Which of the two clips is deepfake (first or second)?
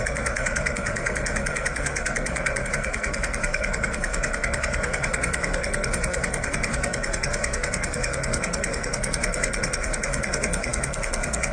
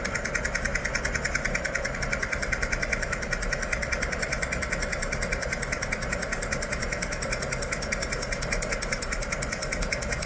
first